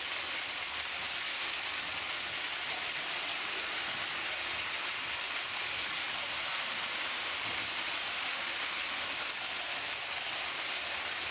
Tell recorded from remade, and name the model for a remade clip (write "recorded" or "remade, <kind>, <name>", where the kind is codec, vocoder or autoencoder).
recorded